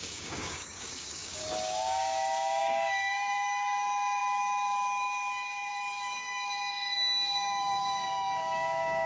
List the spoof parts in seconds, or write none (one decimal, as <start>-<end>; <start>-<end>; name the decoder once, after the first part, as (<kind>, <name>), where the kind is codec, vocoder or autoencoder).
0.0-9.1 (codec, DAC)

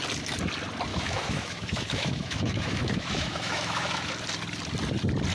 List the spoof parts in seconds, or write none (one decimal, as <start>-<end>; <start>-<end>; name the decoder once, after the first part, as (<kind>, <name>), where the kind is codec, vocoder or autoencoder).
0.9-4.1 (autoencoder, DAC-VAE)

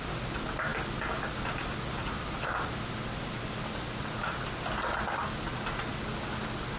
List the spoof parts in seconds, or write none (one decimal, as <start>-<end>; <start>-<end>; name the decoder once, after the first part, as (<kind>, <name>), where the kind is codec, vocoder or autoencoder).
none

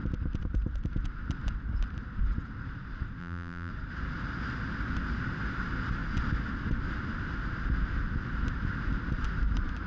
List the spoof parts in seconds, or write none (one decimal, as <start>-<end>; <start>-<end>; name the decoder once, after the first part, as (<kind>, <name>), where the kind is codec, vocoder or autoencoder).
3.2-3.7 (vocoder, BigVGAN v2)

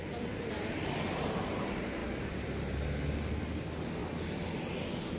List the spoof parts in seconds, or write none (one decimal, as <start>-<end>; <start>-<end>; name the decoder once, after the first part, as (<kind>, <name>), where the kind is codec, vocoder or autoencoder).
none